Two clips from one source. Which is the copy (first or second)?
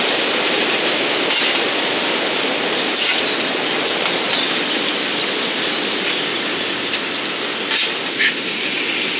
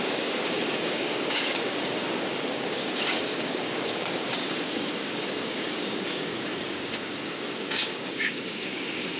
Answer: second